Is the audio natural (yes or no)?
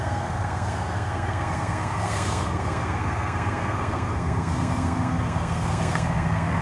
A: no